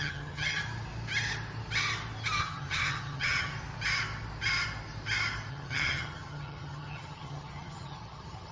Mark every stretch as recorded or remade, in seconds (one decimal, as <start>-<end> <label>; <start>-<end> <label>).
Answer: 0.0-0.6 remade; 0.6-2.4 recorded; 2.4-3.5 remade; 3.5-5.5 recorded; 5.5-8.5 remade